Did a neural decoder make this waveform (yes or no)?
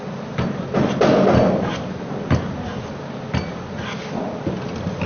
no